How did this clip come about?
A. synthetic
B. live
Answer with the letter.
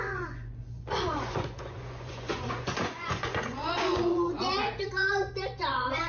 A